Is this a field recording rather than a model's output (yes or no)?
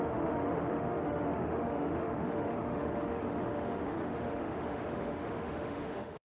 no